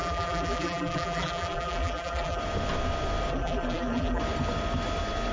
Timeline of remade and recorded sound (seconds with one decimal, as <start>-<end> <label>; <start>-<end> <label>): 0.0-2.4 remade; 2.4-3.3 recorded; 3.3-4.2 remade; 4.2-5.3 recorded